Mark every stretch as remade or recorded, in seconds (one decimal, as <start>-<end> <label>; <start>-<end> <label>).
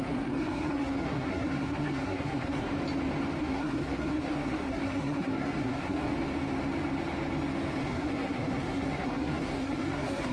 0.0-2.7 remade; 2.7-3.4 recorded; 3.4-6.1 remade; 6.1-7.8 recorded; 7.8-10.3 remade